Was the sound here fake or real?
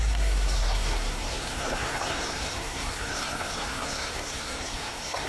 fake